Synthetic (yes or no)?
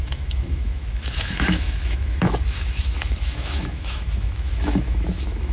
yes